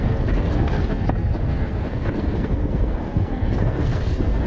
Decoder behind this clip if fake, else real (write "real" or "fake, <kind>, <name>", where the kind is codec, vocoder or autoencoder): fake, codec, SNAC